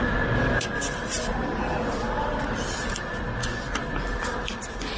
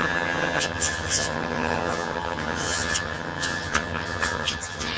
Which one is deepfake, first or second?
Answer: second